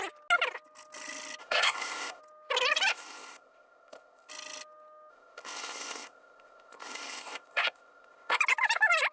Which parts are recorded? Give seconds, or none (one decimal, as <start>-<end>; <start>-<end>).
0.0-1.4; 2.2-2.9; 4.3-5.1; 8.4-9.1